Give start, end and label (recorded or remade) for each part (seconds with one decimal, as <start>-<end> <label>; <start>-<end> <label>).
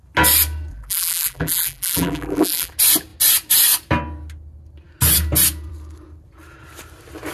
0.0-0.7 recorded; 0.7-2.7 remade; 2.7-7.3 recorded